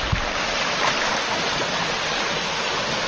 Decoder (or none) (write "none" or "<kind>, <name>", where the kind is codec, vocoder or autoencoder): none